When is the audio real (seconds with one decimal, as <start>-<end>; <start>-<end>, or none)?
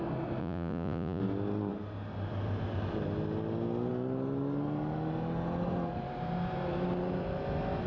0.0-0.4; 1.2-7.9